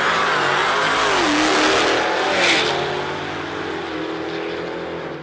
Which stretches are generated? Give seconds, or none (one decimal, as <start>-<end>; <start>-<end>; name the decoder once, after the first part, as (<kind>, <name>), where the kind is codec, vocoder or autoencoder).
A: none